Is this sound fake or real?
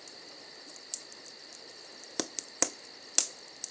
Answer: real